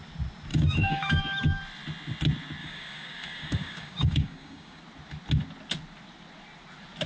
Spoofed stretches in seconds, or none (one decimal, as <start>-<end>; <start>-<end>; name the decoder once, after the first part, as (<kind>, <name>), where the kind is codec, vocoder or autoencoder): 0.5-1.2 (codec, DAC); 2.6-4.8